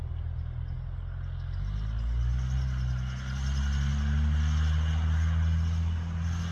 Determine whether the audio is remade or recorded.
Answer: recorded